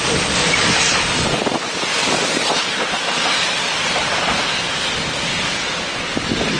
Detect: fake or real real